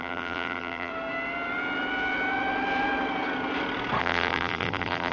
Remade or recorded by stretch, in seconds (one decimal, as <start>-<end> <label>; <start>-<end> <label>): 0.0-0.9 remade; 0.9-4.0 recorded; 4.0-5.1 remade